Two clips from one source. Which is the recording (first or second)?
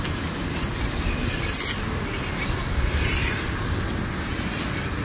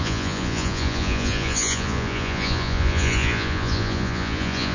first